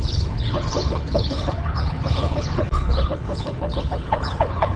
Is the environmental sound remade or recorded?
remade